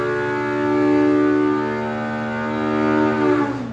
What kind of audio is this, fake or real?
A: real